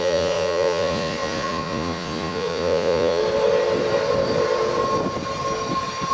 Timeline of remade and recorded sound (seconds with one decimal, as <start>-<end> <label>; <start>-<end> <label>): 0.0-3.2 remade; 3.2-6.1 recorded